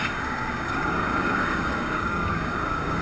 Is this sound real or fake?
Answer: fake